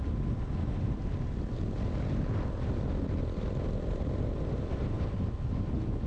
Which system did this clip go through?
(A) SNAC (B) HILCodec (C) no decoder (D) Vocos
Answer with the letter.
C